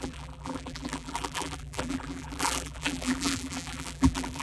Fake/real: fake